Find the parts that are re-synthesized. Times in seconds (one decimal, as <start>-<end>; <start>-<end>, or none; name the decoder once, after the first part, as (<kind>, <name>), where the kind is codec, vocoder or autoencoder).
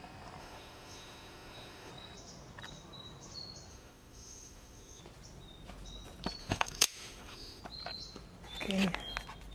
0.4-1.9 (autoencoder, DAC-VAE); 3.7-5.0; 6.4-7.6